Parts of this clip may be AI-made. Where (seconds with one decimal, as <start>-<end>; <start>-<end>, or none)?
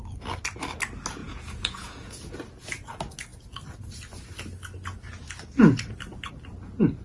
1.2-2.3